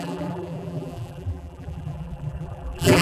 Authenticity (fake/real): fake